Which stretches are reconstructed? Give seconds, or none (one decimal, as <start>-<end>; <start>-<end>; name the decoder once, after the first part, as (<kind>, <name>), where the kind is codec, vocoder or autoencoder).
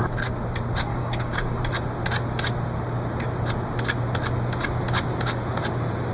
0.9-1.6 (codec, DAC)